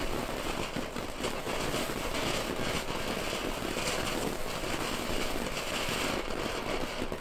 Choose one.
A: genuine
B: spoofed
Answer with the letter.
A